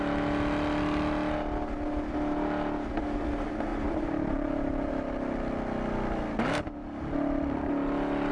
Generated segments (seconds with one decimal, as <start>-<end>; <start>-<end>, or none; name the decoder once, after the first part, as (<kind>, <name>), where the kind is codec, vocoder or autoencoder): 3.7-4.9 (vocoder, BigVGAN v2)